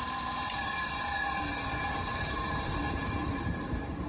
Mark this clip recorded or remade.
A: remade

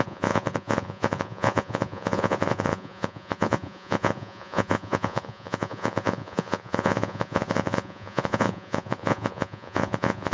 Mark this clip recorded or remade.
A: remade